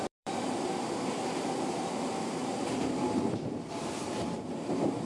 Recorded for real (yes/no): no